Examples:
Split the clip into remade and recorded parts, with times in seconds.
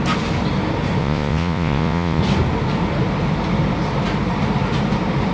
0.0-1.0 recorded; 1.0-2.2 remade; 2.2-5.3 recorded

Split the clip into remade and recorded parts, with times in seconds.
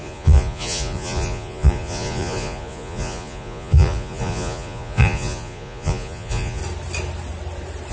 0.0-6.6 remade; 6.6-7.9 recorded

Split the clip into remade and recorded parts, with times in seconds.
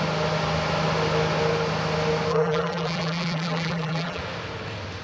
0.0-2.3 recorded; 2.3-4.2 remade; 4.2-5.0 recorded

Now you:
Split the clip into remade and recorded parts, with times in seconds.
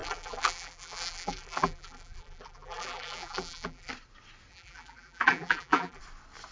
0.0-3.9 remade; 3.9-4.5 recorded; 4.5-6.0 remade; 6.0-6.5 recorded